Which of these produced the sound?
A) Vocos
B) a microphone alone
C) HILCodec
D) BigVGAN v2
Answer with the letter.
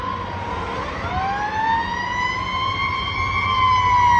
B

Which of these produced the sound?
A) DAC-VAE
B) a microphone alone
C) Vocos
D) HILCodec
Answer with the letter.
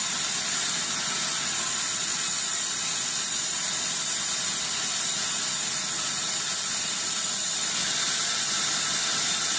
B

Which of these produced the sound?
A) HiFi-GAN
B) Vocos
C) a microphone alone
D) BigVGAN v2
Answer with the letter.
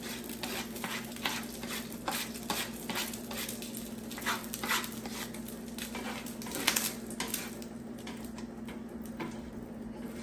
C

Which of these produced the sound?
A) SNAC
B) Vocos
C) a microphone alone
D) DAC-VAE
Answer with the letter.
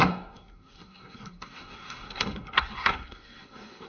A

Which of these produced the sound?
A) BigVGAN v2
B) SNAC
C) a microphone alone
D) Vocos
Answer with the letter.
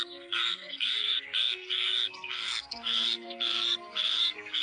B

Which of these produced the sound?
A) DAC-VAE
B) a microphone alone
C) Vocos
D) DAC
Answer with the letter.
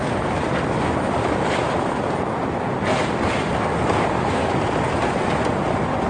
B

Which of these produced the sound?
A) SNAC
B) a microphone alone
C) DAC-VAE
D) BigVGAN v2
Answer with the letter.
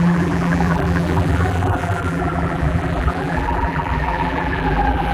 D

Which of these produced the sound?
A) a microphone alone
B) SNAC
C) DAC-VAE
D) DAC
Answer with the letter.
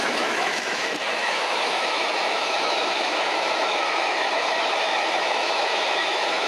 C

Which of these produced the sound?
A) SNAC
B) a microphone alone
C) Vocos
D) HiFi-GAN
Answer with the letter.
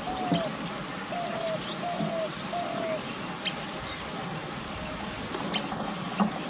B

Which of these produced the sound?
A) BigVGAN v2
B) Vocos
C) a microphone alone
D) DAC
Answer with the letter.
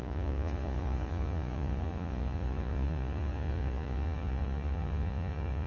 B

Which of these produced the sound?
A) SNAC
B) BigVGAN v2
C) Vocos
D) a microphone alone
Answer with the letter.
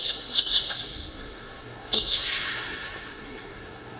A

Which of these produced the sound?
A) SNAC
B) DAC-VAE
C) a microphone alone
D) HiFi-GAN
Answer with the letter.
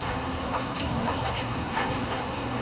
A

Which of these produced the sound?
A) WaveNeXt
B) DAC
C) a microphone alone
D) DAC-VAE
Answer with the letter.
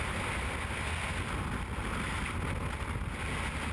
C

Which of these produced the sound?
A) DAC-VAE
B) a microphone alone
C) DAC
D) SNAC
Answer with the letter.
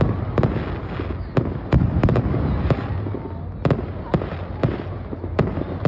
B